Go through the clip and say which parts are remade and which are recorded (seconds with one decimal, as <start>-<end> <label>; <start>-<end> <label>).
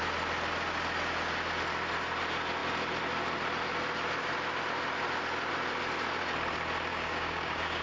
0.0-6.9 recorded; 6.9-7.8 remade